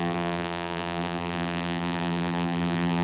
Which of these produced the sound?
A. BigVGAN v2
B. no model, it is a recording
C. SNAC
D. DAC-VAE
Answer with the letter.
A